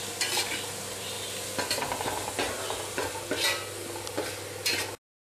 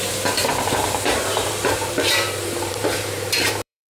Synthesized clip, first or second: second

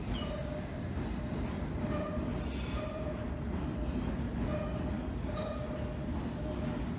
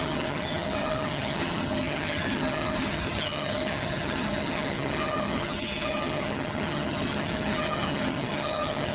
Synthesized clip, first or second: second